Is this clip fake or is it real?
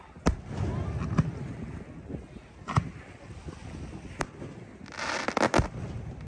real